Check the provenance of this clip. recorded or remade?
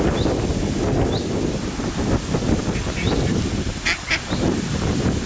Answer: recorded